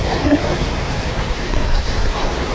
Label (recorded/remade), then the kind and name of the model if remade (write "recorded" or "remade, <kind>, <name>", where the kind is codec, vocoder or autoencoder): remade, codec, SNAC